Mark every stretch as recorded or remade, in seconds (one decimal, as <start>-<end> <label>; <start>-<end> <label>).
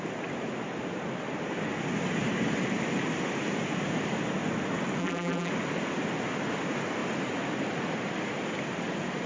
0.0-5.0 recorded; 5.0-5.5 remade; 5.5-9.3 recorded